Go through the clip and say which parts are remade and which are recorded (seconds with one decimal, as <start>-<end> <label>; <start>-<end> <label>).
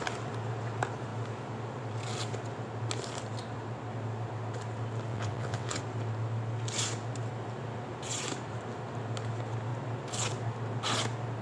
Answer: 0.0-5.1 recorded; 5.1-5.8 remade; 5.8-11.4 recorded